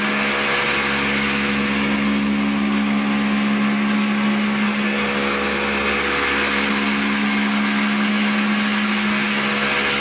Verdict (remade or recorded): recorded